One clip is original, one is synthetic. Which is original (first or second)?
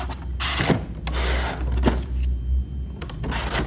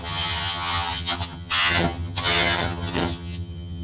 first